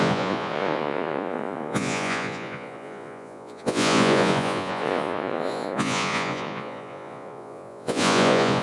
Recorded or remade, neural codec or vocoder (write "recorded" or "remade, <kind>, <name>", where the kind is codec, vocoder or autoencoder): remade, vocoder, Vocos